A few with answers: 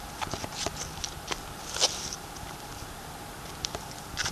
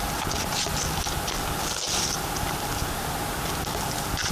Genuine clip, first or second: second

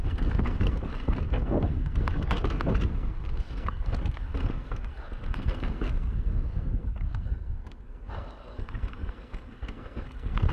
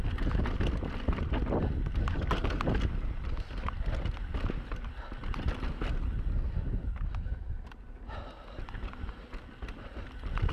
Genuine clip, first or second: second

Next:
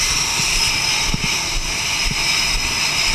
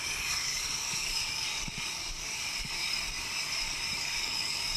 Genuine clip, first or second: first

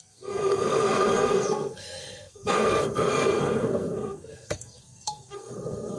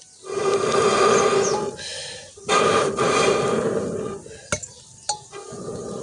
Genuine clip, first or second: second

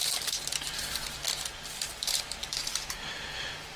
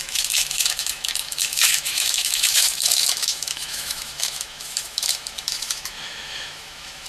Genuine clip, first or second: first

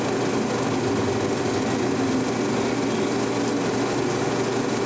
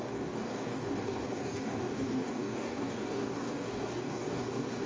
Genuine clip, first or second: first